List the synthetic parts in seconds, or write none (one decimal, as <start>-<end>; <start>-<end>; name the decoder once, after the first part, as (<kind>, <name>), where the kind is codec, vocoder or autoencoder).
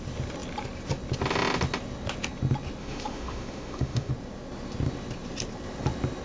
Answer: 2.8-4.1 (autoencoder, DAC-VAE)